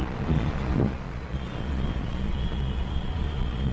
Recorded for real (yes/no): no